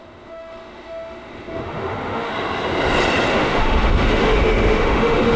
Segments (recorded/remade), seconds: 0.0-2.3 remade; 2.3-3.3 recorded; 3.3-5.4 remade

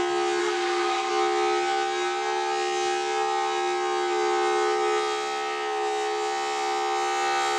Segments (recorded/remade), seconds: 0.0-0.4 recorded; 0.4-1.1 remade; 1.1-7.6 recorded

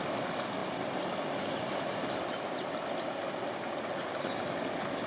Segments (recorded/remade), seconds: 0.0-5.1 recorded

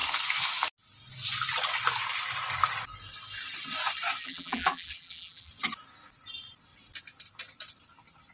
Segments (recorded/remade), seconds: 0.0-4.2 recorded; 4.2-5.5 remade; 5.5-8.3 recorded

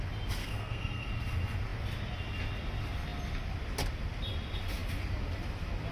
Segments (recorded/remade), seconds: 0.0-0.4 recorded; 0.4-1.1 remade; 1.1-5.9 recorded